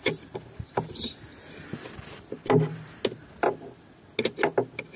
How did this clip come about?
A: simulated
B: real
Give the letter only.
B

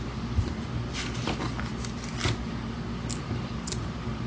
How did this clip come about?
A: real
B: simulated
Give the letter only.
A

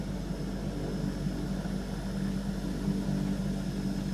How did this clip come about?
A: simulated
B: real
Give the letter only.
B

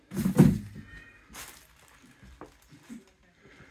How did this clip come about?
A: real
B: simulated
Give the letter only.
A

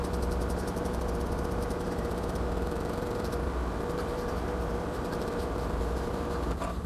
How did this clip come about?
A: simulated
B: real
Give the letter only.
A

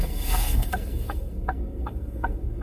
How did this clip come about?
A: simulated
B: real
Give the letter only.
A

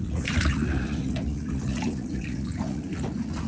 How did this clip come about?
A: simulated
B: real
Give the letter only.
A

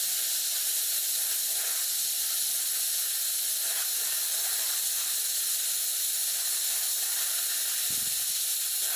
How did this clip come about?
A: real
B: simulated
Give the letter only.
A